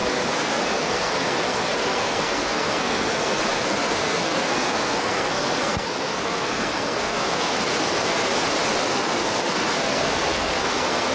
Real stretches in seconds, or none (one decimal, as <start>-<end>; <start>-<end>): 8.3-8.8